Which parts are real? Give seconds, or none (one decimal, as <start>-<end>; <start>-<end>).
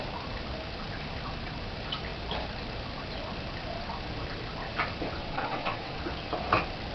0.0-5.2; 6.0-6.9